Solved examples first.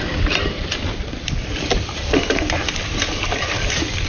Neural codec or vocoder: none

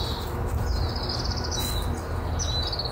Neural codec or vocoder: none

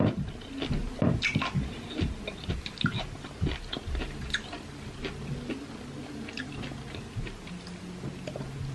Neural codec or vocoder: none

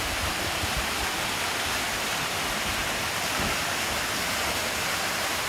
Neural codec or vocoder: none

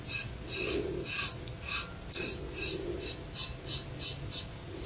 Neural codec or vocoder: none